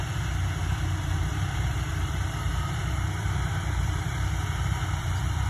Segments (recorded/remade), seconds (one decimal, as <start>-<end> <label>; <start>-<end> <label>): 0.0-0.6 recorded; 0.6-5.5 remade